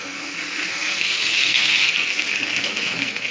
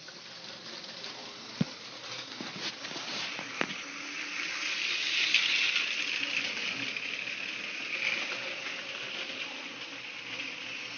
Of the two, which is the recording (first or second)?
second